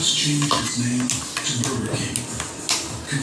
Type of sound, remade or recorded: recorded